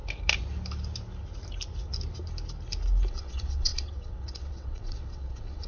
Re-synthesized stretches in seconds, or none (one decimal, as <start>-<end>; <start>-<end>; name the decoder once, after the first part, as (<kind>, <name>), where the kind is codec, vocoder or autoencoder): 3.1-5.7 (vocoder, WaveNeXt)